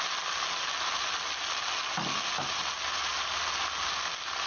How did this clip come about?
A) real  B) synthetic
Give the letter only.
A